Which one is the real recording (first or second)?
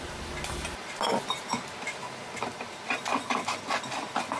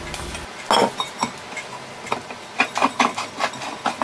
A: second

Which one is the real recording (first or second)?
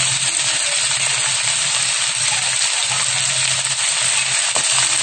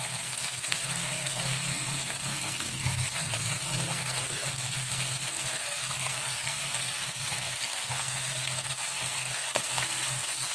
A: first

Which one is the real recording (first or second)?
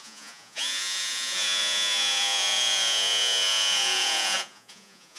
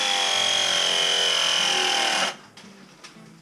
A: second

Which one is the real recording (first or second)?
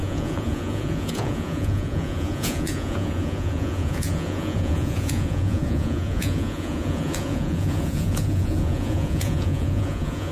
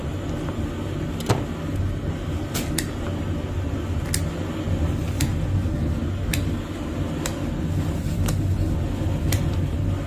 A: second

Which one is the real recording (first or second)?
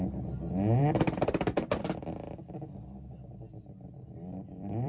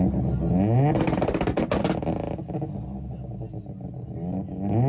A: second